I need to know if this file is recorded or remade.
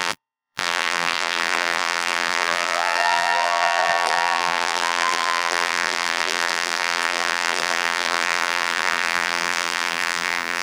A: remade